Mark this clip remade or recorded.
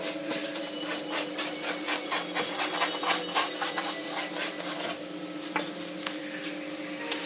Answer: recorded